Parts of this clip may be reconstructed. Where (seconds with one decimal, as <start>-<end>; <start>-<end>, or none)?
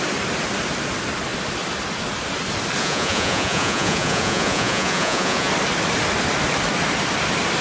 2.8-5.5